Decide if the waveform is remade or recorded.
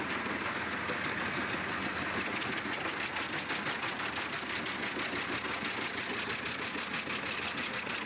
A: recorded